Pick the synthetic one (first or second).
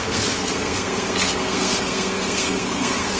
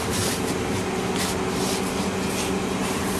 first